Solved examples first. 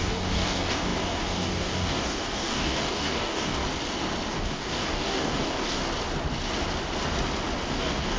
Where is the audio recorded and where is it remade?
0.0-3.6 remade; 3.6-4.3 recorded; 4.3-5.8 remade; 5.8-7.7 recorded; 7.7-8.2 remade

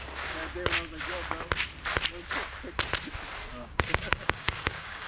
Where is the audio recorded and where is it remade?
0.0-0.4 remade; 0.4-3.5 recorded; 3.5-5.1 remade

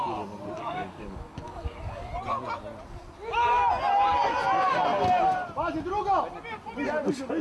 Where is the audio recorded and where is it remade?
0.0-0.6 recorded; 0.6-2.1 remade; 2.1-7.4 recorded